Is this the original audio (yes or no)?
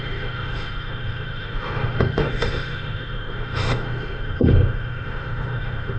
no